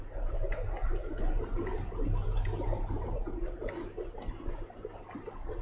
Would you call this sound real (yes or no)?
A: yes